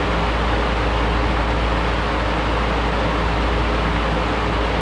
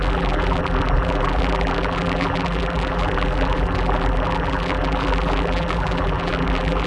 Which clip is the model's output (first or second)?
second